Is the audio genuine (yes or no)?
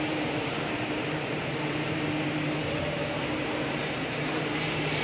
no